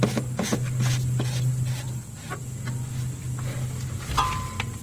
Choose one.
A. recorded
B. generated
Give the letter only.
A